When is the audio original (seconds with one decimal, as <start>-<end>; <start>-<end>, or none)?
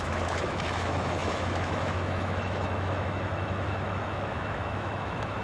none